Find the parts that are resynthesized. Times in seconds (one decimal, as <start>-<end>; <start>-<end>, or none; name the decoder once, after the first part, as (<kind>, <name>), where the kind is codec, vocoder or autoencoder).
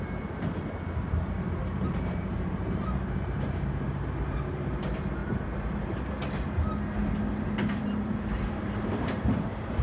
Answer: 1.6-4.8 (vocoder, BigVGAN v2); 5.2-6.1; 7.3-9.8